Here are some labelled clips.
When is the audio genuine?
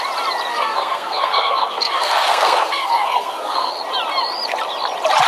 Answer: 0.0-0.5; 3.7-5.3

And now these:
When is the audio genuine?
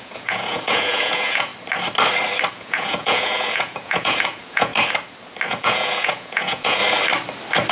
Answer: 1.5-2.5; 4.7-5.5; 6.8-7.7